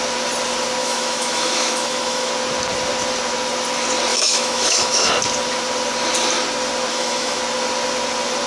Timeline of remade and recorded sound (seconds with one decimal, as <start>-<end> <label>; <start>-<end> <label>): 0.0-0.8 recorded; 0.8-2.3 remade; 2.3-4.1 recorded; 4.1-5.1 remade; 5.1-6.9 recorded; 6.9-7.4 remade; 7.4-8.5 recorded